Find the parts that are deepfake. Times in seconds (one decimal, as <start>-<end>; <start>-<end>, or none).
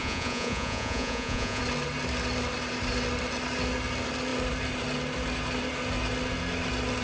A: 0.0-1.6